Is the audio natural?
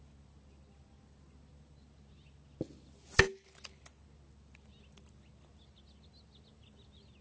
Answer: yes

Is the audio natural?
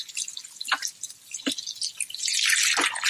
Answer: yes